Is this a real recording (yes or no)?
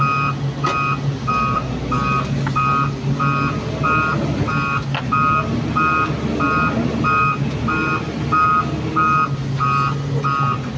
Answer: yes